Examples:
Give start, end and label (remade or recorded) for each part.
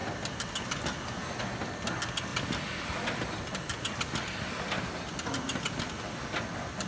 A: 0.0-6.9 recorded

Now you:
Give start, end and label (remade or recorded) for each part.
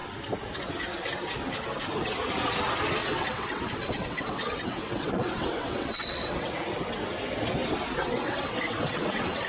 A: 0.0-3.0 recorded; 3.0-6.5 remade; 6.5-8.0 recorded; 8.0-9.5 remade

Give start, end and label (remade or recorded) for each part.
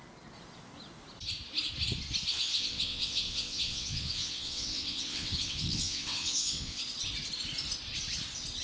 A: 0.0-2.3 recorded; 2.3-6.8 remade; 6.8-8.6 recorded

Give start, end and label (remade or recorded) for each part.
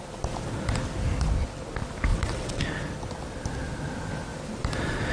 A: 0.0-2.1 recorded; 2.1-2.6 remade; 2.6-5.1 recorded